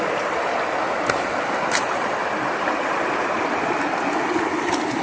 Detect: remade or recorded recorded